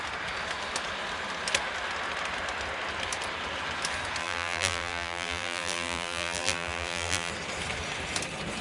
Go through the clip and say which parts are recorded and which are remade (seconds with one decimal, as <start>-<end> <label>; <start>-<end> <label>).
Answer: 0.0-4.2 recorded; 4.2-7.3 remade; 7.3-8.6 recorded

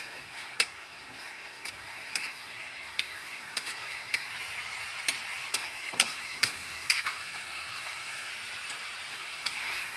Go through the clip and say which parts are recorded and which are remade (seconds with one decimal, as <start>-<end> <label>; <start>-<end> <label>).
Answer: 0.0-4.3 remade; 4.3-5.5 recorded; 5.5-8.3 remade; 8.3-9.1 recorded; 9.1-10.0 remade

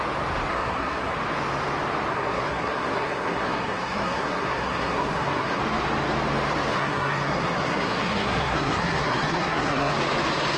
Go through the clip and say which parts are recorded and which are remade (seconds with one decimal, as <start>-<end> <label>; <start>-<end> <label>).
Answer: 0.0-0.5 recorded; 0.5-1.1 remade; 1.1-2.1 recorded; 2.1-5.6 remade; 5.6-6.7 recorded; 6.7-9.9 remade; 9.9-10.6 recorded

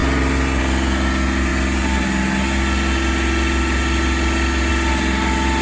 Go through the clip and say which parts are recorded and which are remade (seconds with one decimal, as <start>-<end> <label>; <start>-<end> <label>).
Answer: 0.0-5.6 recorded

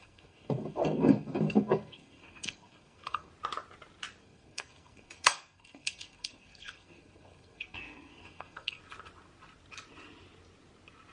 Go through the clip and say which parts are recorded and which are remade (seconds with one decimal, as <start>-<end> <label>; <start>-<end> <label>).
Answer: 0.0-3.3 remade; 3.3-4.2 recorded; 4.2-8.8 remade; 8.8-11.1 recorded

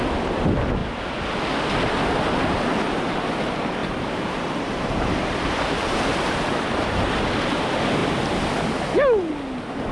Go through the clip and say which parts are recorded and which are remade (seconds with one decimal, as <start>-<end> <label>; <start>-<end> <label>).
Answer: 0.0-3.8 recorded; 3.8-7.5 remade; 7.5-9.9 recorded